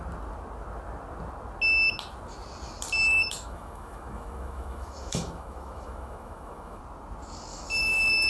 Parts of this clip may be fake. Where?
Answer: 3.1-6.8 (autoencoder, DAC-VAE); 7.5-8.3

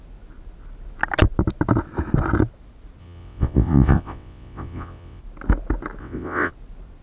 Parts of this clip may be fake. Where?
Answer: 3.0-5.2 (vocoder, WaveNeXt); 6.0-6.5

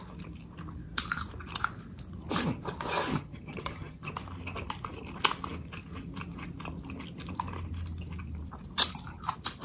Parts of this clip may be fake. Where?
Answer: 3.1-4.1 (vocoder, HiFi-GAN)

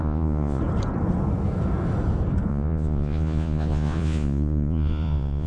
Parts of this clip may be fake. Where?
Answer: 0.0-0.6 (vocoder, Vocos); 2.5-5.5

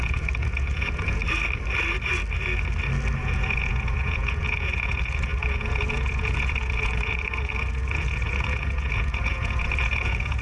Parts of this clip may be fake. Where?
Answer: 0.0-1.2 (vocoder, Vocos); 3.2-10.4

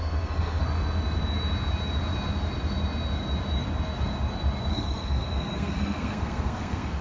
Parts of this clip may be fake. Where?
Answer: 0.0-0.6 (codec, SNAC); 4.7-7.0

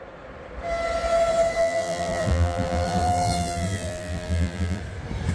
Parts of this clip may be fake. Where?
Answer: 1.6-4.8 (vocoder, BigVGAN v2)

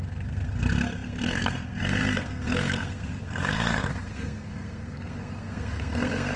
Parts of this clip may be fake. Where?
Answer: 0.0-6.4 (codec, SNAC)